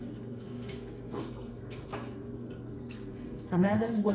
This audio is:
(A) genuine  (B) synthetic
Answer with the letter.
B